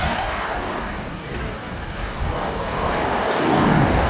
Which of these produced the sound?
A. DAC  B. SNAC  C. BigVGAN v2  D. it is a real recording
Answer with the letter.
A